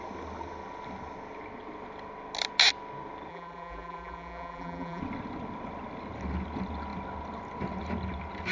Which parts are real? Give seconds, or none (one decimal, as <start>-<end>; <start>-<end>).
0.0-3.3; 5.0-8.5